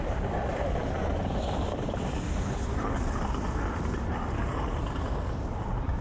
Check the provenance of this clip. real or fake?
real